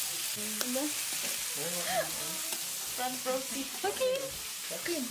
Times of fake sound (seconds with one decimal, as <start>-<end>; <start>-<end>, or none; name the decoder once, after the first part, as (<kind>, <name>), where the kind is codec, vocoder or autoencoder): none